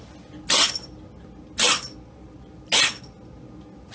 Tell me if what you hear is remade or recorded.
recorded